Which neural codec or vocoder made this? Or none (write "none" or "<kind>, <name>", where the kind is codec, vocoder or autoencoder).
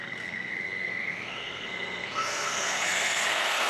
codec, SNAC